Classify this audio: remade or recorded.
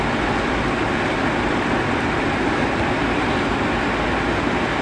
recorded